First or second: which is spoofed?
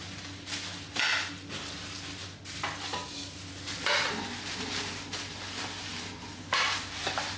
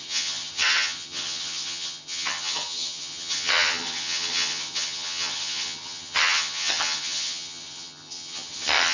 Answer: second